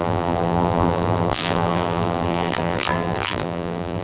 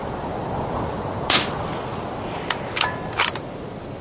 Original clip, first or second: second